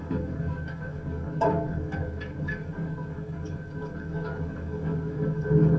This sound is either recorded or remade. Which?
remade